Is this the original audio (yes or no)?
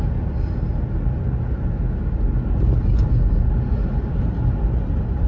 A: yes